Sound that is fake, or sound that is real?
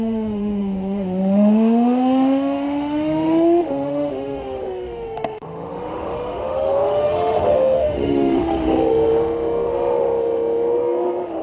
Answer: fake